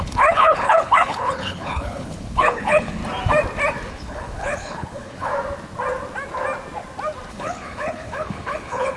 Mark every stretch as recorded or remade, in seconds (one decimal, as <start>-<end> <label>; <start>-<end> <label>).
0.0-3.0 remade; 3.0-3.9 recorded; 3.9-5.3 remade; 5.3-7.3 recorded; 7.3-9.0 remade